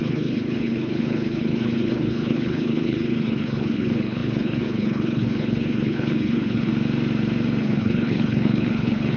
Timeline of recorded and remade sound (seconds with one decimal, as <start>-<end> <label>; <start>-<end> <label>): 0.0-6.7 remade; 6.7-7.6 recorded; 7.6-9.2 remade

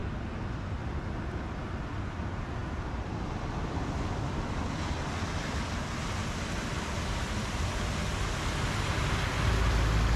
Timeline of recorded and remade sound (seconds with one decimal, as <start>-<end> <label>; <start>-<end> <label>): 0.0-2.6 recorded; 2.6-3.1 remade; 3.1-6.2 recorded; 6.2-8.2 remade; 8.2-10.2 recorded

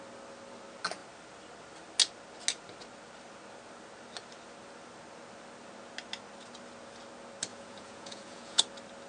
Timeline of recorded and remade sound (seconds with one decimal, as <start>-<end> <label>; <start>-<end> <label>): 0.0-7.5 recorded; 7.5-8.6 remade; 8.6-9.1 recorded

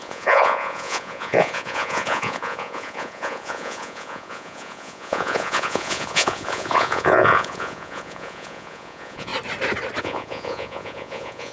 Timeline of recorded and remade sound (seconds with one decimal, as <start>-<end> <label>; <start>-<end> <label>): 0.0-9.3 remade; 9.3-10.0 recorded; 10.0-11.5 remade

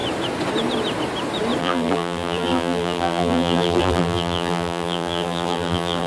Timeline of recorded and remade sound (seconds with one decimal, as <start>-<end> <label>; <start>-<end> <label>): 0.0-1.6 recorded; 1.6-6.1 remade

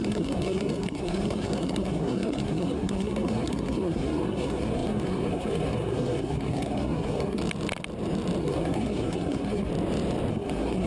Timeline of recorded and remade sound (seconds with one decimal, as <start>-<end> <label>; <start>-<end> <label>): 0.0-7.4 remade; 7.4-8.4 recorded; 8.4-9.7 remade; 9.7-10.3 recorded; 10.3-10.9 remade